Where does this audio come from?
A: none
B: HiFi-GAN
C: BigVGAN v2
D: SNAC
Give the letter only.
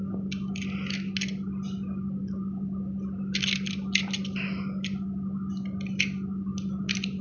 A